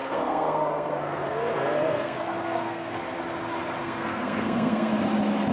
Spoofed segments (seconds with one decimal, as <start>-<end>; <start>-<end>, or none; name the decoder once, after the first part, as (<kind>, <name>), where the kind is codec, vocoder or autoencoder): 0.0-3.0 (codec, SNAC); 3.8-4.9

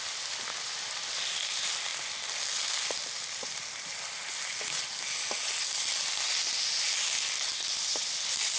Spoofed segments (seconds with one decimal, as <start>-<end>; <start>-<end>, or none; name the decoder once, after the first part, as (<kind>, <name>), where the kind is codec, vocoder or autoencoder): none

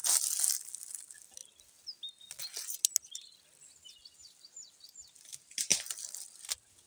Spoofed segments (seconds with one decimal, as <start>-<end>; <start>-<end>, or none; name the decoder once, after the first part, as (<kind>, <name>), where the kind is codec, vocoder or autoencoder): none